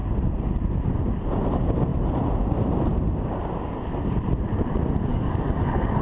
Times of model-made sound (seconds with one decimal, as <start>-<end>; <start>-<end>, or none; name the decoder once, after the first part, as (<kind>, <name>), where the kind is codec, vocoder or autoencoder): 5.1-6.0 (codec, DAC)